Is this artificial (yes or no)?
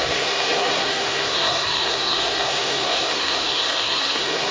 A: yes